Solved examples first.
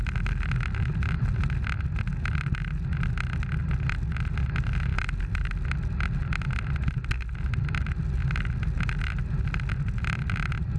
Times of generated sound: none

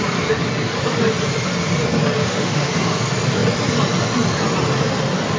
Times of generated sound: 2.2-2.7 (autoencoder, DAC-VAE)

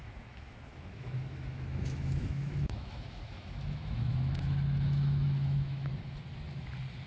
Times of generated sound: 0.0-5.9 (autoencoder, DAC-VAE)

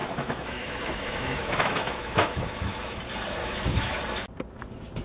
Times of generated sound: 0.0-3.0 (autoencoder, DAC-VAE); 3.4-4.0

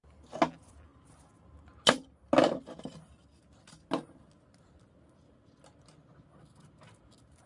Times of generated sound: none

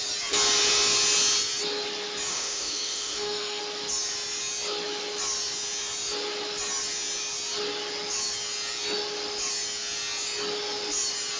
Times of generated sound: 2.3-3.6 (autoencoder, DAC-VAE)